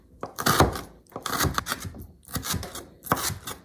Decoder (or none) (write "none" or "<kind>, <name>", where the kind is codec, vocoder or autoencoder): vocoder, BigVGAN v2